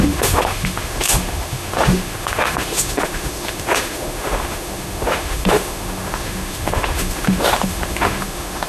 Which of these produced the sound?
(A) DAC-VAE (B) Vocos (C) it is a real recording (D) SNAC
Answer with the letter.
A